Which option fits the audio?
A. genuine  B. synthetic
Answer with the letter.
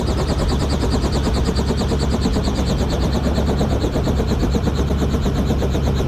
A